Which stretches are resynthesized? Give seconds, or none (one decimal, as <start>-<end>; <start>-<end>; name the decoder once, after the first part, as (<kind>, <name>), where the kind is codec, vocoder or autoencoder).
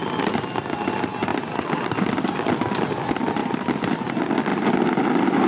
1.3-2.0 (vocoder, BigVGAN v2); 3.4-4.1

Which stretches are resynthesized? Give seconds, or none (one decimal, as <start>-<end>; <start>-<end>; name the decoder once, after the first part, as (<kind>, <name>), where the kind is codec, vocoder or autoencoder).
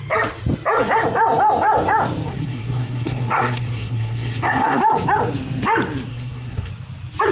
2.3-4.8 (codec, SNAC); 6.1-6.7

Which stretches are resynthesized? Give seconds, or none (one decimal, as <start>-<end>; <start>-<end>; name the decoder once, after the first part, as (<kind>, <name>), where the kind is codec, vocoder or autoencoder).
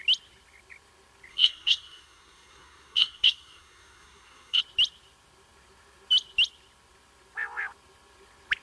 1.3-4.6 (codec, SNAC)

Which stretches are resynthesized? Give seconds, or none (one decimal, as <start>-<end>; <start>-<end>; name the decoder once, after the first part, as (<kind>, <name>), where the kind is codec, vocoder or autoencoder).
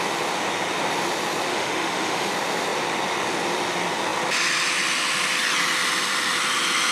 1.5-2.3 (autoencoder, DAC-VAE)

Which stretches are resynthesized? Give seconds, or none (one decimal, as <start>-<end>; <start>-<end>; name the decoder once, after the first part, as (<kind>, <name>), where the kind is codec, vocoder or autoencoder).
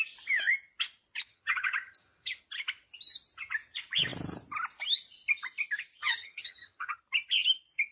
1.3-2.4 (vocoder, HiFi-GAN); 6.0-7.0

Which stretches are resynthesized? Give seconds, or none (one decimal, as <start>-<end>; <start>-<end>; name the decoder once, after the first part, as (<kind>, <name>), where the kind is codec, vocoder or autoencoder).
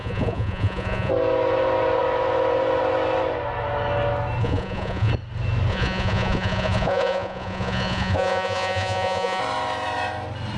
0.0-1.1 (vocoder, Vocos); 4.4-5.1; 5.7-9.4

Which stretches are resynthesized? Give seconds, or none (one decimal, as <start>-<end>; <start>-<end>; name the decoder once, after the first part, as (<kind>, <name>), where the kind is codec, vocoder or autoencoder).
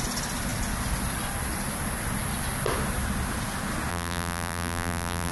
3.9-5.3 (vocoder, BigVGAN v2)